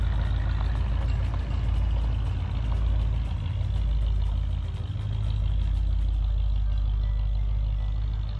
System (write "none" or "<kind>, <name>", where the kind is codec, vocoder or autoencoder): none